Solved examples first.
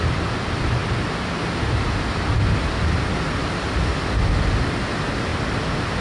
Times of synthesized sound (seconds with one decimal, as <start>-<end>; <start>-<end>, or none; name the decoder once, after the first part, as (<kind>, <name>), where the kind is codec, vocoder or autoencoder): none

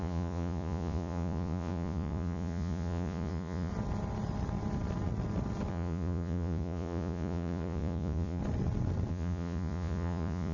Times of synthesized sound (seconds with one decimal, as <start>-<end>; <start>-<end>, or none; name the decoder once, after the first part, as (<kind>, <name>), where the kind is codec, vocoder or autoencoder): 0.0-3.7 (vocoder, Vocos); 5.7-8.4; 9.1-10.5

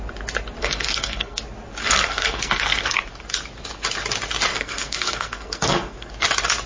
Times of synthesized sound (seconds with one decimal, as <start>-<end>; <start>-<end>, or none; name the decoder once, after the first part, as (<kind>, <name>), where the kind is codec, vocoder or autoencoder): 0.6-1.4 (codec, SNAC); 1.8-3.0; 4.5-6.1

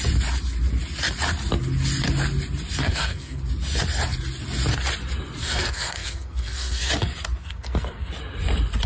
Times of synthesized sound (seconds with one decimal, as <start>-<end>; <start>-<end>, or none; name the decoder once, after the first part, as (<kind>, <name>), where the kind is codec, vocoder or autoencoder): 2.8-3.4 (codec, SNAC); 5.4-6.9; 7.4-8.1

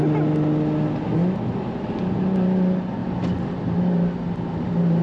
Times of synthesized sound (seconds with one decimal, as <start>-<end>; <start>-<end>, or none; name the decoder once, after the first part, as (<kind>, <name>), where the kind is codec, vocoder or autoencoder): none

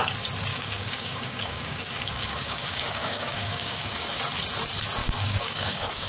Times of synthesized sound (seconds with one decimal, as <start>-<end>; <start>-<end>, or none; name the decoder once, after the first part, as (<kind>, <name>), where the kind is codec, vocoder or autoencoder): 0.5-4.2 (codec, DAC); 5.0-6.1

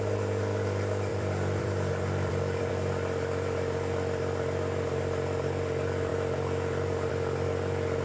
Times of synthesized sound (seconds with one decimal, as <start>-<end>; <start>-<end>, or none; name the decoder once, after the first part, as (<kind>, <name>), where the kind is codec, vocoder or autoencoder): 1.1-2.7 (vocoder, BigVGAN v2)